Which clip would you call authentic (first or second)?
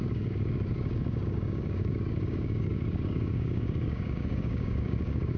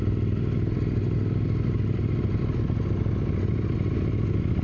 second